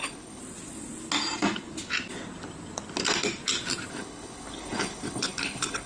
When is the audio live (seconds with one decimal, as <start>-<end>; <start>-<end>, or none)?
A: 0.4-3.9